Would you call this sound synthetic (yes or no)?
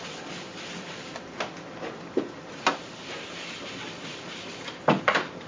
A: no